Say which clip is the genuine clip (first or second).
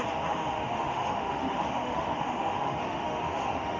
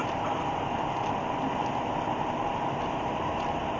second